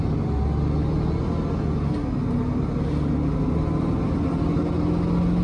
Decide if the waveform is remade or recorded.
recorded